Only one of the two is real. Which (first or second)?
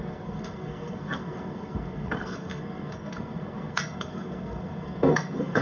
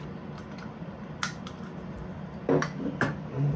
second